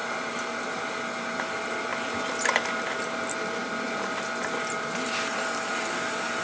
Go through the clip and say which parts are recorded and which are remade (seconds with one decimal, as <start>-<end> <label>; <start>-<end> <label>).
0.0-6.4 recorded